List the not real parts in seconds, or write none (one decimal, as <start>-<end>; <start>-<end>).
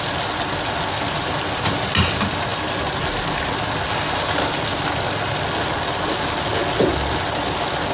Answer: none